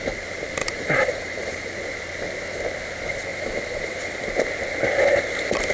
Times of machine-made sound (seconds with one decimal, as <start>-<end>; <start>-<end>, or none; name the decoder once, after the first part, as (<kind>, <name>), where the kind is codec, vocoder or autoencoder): 0.6-1.7 (vocoder, BigVGAN v2); 3.3-4.2